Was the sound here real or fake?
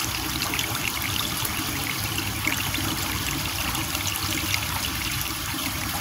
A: fake